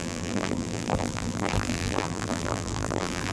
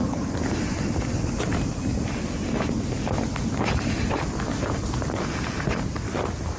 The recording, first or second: second